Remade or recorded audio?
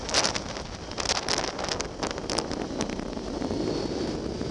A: recorded